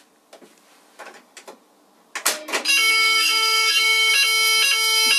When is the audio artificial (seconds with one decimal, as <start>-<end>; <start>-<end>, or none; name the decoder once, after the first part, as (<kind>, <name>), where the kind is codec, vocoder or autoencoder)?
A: 2.9-4.1 (codec, SNAC)